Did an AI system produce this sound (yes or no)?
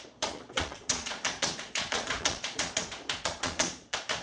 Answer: yes